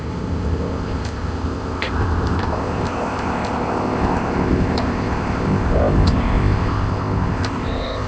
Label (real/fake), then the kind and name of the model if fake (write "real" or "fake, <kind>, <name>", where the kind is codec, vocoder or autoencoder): fake, codec, ZipCodec